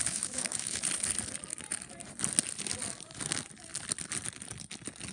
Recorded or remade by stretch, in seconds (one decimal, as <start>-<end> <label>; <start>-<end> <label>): 0.0-0.8 remade; 0.8-5.1 recorded